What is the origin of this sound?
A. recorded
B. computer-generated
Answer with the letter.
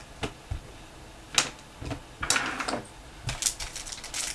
A